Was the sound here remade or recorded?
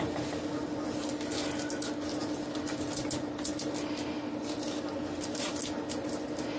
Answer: recorded